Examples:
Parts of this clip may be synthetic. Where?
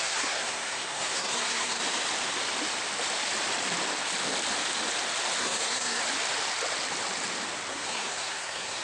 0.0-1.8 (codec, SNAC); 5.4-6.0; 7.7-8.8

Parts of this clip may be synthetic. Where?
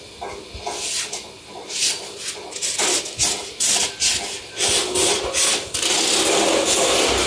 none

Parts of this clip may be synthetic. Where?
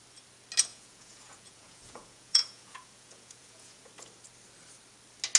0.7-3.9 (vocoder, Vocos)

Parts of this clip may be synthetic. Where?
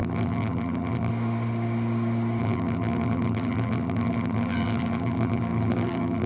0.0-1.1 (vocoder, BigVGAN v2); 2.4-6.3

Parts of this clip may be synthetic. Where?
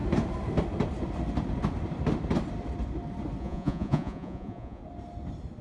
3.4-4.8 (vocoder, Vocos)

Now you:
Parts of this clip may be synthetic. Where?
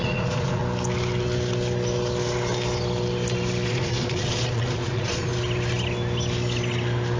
0.0-0.6 (vocoder, Vocos); 3.7-5.3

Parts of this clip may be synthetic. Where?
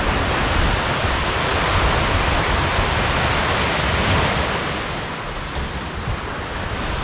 none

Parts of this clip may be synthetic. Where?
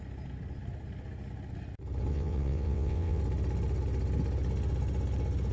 2.1-3.2 (vocoder, WaveNeXt)